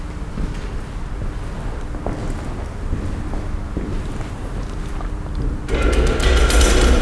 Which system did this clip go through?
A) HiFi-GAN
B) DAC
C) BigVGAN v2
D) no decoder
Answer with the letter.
D